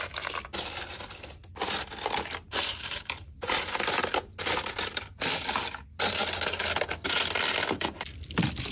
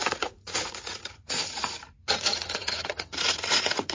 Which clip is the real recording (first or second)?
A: first